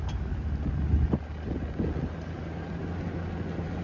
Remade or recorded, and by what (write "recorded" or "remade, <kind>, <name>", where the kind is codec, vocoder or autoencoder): recorded